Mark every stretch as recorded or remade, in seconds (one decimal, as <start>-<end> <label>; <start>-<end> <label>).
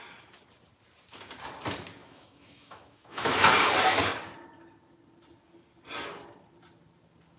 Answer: 0.0-2.0 recorded; 2.0-3.5 remade; 3.5-7.4 recorded